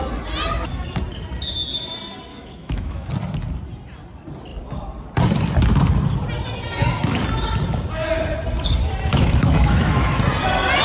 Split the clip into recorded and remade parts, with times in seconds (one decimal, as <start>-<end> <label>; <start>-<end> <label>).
0.0-2.3 recorded; 2.3-3.1 remade; 3.1-9.1 recorded; 9.1-10.2 remade; 10.2-10.8 recorded